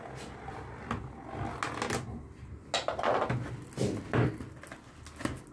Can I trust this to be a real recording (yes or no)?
yes